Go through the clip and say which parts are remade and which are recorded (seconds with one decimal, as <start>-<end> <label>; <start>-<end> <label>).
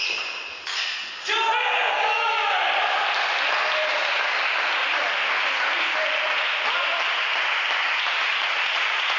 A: 0.0-8.3 recorded; 8.3-9.2 remade